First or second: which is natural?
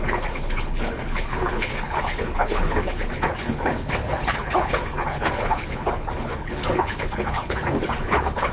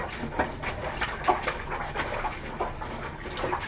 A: second